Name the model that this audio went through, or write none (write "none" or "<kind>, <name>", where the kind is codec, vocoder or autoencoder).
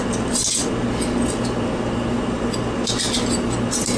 none